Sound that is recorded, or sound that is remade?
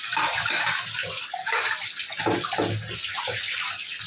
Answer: recorded